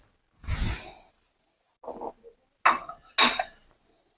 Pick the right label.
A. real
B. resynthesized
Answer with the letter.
A